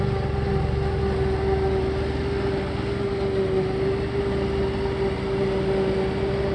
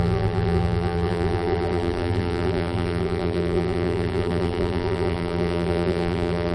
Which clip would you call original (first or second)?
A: first